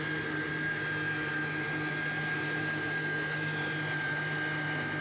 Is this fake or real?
real